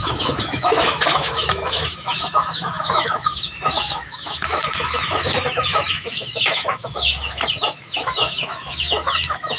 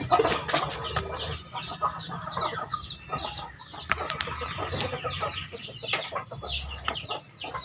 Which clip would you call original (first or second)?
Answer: second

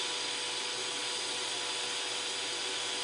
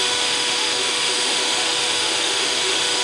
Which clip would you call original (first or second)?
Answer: first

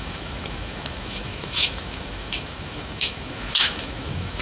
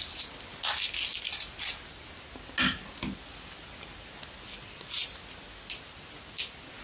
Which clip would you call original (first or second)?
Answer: second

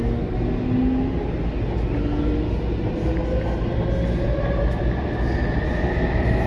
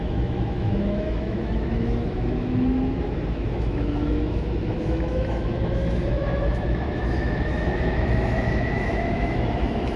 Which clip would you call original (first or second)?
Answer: first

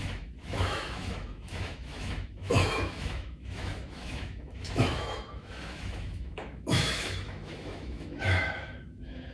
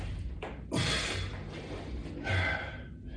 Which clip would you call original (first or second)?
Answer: second